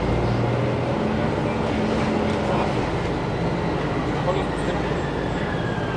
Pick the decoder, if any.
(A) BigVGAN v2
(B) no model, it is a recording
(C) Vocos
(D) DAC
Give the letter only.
B